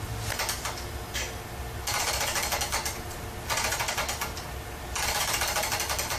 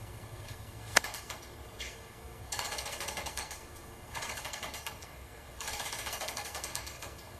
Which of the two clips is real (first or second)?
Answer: first